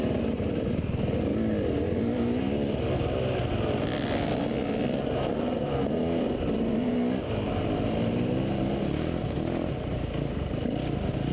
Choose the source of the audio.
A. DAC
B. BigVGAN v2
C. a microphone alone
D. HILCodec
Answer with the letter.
C